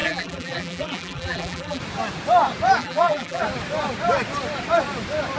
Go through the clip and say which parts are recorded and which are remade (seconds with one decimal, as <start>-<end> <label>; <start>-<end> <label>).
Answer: 0.0-1.8 remade; 1.8-2.8 recorded; 2.8-3.4 remade; 3.4-5.4 recorded